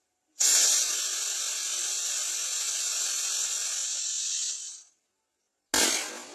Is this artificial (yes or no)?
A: no